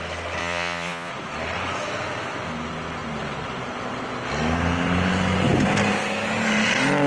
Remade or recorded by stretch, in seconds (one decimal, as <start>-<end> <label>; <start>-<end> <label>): 0.0-0.4 recorded; 0.4-1.1 remade; 1.1-7.1 recorded